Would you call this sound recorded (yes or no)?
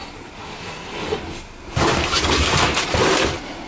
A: yes